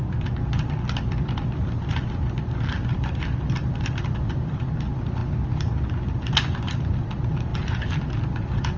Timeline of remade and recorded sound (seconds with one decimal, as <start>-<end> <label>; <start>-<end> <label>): 0.0-1.0 recorded; 1.0-1.9 remade; 1.9-2.7 recorded; 2.7-5.2 remade; 5.2-6.6 recorded; 6.6-8.8 remade